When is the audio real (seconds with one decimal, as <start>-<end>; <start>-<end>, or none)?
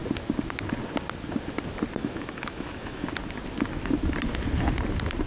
0.0-2.0; 3.1-5.3